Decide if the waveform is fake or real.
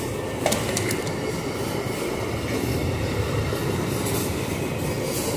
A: real